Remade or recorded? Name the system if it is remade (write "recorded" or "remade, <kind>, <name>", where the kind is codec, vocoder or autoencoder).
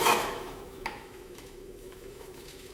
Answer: remade, autoencoder, DAC-VAE